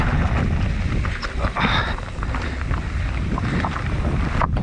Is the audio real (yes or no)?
yes